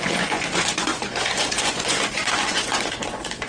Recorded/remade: remade